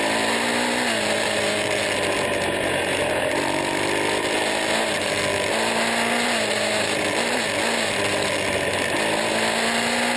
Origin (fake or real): real